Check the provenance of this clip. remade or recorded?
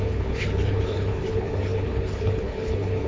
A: remade